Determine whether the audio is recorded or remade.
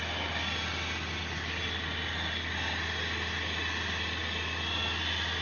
recorded